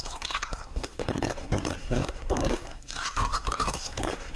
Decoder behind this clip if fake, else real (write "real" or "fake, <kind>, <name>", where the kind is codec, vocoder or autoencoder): fake, codec, SNAC